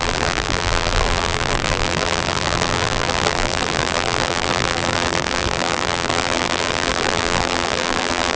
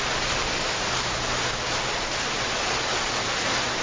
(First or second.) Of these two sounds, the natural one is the second